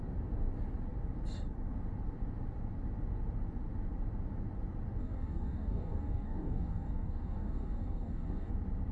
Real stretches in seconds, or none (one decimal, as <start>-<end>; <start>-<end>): 0.0-5.0; 8.5-8.9